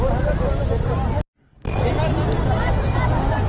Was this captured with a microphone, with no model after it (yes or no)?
yes